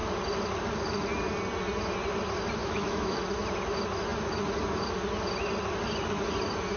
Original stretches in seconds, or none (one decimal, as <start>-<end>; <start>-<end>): 0.0-2.6; 3.2-6.8